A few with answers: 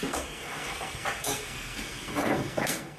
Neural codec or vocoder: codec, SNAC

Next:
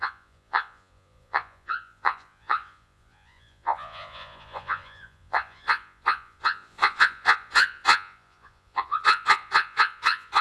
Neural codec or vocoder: vocoder, Vocos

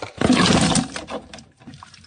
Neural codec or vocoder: vocoder, BigVGAN v2